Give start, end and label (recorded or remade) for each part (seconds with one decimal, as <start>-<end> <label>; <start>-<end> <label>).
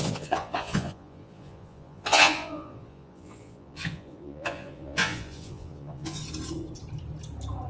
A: 0.0-6.2 remade; 6.2-7.7 recorded